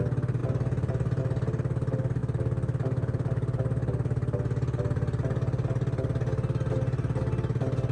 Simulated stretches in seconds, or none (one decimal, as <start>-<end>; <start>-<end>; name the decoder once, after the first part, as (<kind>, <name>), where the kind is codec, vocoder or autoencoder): none